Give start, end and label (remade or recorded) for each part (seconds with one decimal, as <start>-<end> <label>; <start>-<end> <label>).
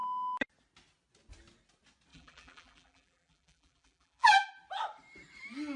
0.0-2.1 recorded; 2.1-4.5 remade; 4.5-5.8 recorded